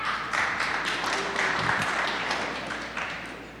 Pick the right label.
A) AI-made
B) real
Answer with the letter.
A